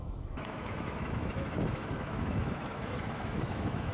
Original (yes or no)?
no